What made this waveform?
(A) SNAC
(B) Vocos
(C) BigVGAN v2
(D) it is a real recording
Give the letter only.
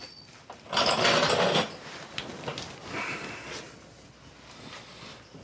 D